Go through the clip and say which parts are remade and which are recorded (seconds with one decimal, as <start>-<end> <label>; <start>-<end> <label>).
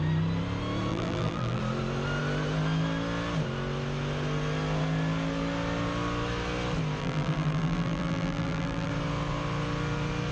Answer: 0.0-0.9 recorded; 0.9-1.6 remade; 1.6-7.0 recorded; 7.0-8.9 remade; 8.9-10.3 recorded